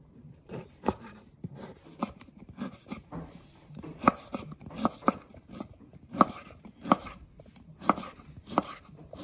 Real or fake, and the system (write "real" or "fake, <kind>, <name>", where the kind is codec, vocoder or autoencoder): fake, vocoder, BigVGAN v2